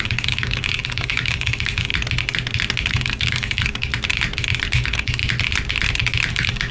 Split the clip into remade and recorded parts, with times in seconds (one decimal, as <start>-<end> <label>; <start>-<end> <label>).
0.0-1.9 remade; 1.9-2.9 recorded; 2.9-3.9 remade; 3.9-4.7 recorded; 4.7-5.2 remade; 5.2-6.3 recorded; 6.3-6.7 remade